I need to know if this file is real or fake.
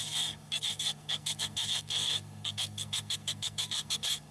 fake